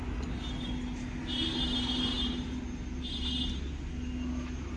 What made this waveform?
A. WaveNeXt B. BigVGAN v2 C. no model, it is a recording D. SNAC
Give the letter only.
C